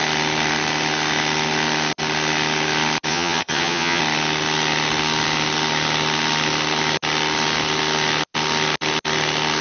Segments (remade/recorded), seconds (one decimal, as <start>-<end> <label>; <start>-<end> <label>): 0.0-3.1 recorded; 3.1-4.0 remade; 4.0-9.6 recorded